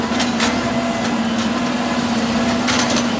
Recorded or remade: recorded